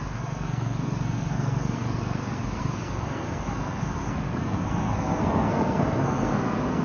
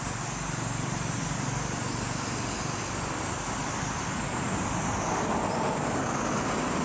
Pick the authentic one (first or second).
second